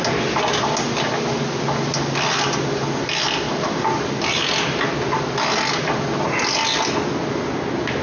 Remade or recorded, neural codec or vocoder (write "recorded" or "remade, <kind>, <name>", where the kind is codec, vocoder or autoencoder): recorded